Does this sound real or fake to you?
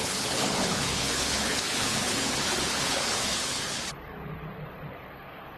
fake